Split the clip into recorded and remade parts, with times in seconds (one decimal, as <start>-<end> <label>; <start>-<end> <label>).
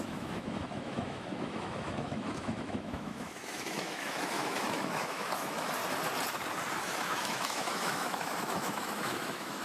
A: 0.0-5.8 remade; 5.8-6.8 recorded; 6.8-9.6 remade